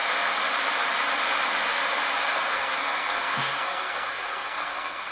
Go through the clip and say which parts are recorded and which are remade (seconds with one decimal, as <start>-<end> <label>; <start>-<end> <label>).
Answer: 0.0-2.3 recorded; 2.3-5.1 remade